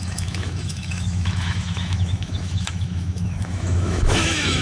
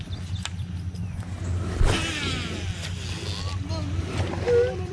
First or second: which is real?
second